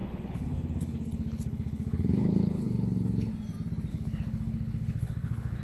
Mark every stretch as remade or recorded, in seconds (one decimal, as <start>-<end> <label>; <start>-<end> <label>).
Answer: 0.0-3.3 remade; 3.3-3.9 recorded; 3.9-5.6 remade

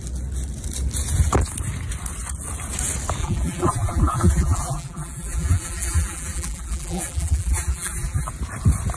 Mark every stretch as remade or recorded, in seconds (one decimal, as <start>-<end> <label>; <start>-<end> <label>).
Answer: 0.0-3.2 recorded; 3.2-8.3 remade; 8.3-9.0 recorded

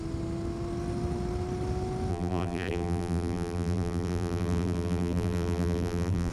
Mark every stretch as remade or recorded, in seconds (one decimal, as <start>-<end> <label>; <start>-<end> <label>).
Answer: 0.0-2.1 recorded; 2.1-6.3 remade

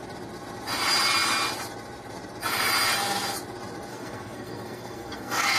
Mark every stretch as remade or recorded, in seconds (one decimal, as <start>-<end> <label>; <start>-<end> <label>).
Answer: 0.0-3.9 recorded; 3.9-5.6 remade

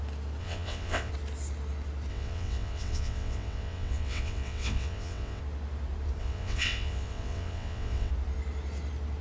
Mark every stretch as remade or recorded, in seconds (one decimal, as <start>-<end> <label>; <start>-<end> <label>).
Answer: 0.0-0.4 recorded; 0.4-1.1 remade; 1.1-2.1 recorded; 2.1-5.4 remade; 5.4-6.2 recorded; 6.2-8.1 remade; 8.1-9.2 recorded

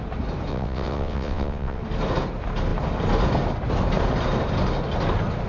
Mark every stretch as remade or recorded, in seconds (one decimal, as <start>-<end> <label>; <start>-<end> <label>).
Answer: 0.0-0.5 recorded; 0.5-1.8 remade; 1.8-5.5 recorded

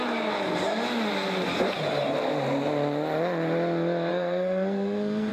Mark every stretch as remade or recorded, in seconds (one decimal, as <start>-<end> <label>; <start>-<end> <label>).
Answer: 0.0-4.1 recorded; 4.1-5.3 remade